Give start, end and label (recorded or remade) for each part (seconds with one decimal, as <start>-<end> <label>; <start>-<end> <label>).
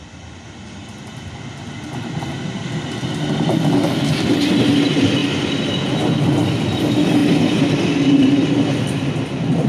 0.0-9.7 recorded